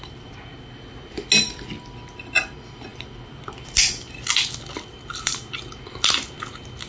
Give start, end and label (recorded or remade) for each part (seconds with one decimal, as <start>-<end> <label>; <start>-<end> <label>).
0.0-6.9 recorded